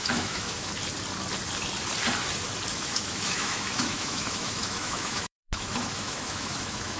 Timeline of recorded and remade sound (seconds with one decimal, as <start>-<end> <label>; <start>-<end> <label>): 0.0-0.7 remade; 0.7-2.7 recorded; 2.7-7.0 remade